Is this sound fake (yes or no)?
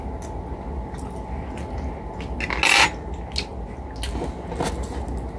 no